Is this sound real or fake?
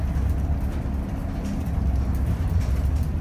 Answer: real